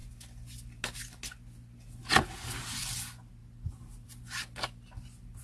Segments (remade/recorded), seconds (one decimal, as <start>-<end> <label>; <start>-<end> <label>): 0.0-5.4 recorded

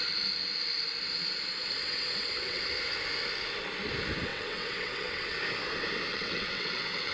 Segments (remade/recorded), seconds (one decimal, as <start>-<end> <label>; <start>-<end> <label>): 0.0-1.8 recorded; 1.8-2.6 remade; 2.6-4.3 recorded; 4.3-5.4 remade; 5.4-6.1 recorded; 6.1-7.1 remade

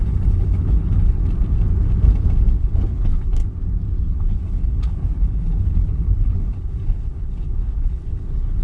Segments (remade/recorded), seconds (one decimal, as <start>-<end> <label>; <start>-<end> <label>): 0.0-1.2 remade; 1.2-2.6 recorded; 2.6-3.4 remade; 3.4-4.0 recorded; 4.0-8.6 remade

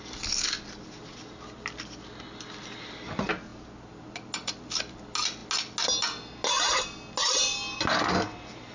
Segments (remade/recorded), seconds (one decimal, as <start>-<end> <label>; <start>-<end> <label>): 0.0-8.7 recorded

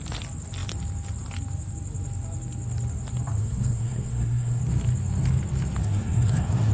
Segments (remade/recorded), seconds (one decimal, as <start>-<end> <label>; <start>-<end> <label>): 0.0-3.4 recorded; 3.4-4.6 remade; 4.6-5.8 recorded; 5.8-6.7 remade

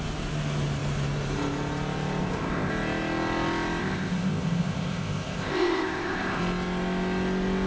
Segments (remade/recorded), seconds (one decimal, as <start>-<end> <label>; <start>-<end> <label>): 0.0-2.2 recorded; 2.2-2.7 remade; 2.7-3.8 recorded; 3.8-6.4 remade; 6.4-7.7 recorded

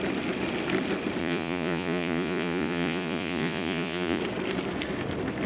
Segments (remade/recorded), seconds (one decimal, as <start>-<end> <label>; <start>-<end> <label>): 0.0-1.2 recorded; 1.2-4.2 remade; 4.2-5.5 recorded

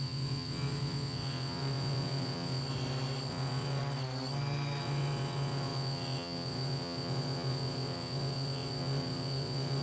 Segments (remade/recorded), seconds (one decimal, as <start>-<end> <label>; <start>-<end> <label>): 0.0-2.6 remade; 2.6-3.3 recorded; 3.3-3.8 remade; 3.8-4.8 recorded; 4.8-9.8 remade